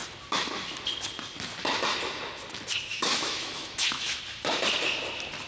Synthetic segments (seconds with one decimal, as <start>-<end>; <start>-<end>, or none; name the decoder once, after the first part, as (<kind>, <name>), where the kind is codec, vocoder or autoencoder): 2.9-4.2 (autoencoder, DAC-VAE)